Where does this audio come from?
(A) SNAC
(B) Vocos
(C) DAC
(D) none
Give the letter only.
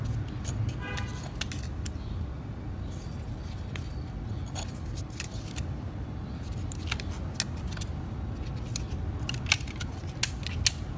D